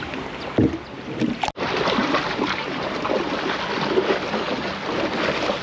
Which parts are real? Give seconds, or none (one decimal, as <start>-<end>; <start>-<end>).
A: 0.0-2.0; 3.0-5.6